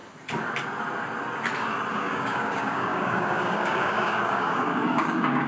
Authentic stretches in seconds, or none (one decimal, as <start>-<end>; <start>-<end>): 0.0-1.9